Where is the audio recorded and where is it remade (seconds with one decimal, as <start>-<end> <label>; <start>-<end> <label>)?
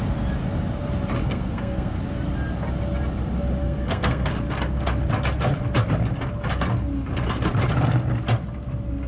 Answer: 0.0-1.2 recorded; 1.2-1.9 remade; 1.9-3.6 recorded; 3.6-4.3 remade; 4.3-9.1 recorded